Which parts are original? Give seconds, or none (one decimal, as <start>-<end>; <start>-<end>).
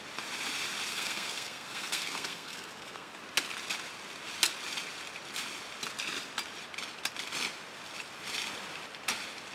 0.0-0.9; 3.1-9.5